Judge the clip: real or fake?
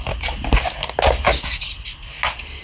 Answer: real